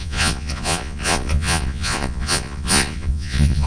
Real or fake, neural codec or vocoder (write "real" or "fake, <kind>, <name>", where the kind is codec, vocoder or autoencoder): fake, vocoder, Vocos